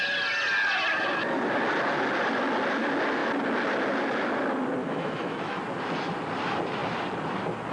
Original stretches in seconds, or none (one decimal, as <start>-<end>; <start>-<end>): 0.0-4.8; 5.6-7.7

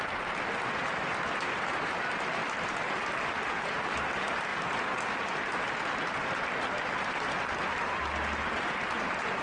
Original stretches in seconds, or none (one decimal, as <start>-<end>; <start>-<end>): 0.0-2.4; 3.9-4.5; 5.3-9.4

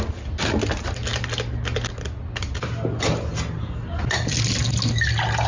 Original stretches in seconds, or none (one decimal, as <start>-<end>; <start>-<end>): 0.0-5.5

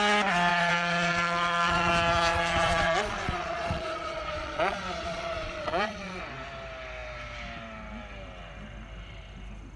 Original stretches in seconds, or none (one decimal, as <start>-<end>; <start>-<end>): 0.0-0.5; 1.9-2.3; 6.2-9.8

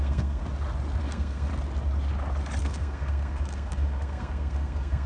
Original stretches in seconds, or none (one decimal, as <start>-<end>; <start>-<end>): 0.4-1.0; 1.5-2.6

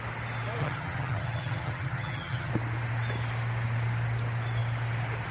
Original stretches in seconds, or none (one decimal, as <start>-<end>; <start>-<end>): 0.0-0.6; 2.5-5.3